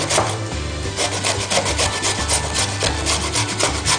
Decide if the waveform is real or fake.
real